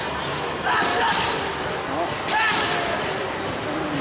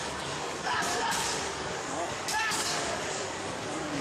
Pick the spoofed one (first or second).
second